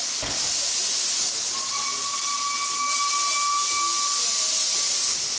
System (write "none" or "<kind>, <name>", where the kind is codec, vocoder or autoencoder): none